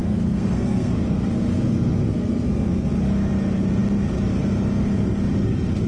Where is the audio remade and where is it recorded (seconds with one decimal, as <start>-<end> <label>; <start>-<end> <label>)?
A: 0.0-2.9 remade; 2.9-5.9 recorded